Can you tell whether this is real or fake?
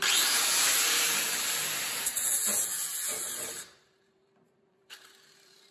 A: fake